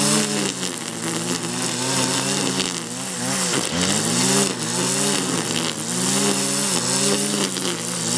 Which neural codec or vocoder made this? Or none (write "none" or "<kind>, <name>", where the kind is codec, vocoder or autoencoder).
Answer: none